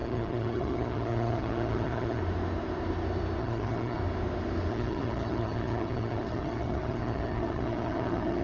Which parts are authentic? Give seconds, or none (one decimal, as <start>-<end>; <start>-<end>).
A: 2.2-3.4; 4.0-4.7